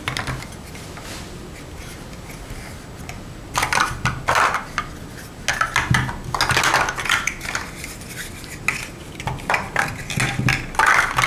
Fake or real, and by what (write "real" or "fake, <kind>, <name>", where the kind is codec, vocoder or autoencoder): real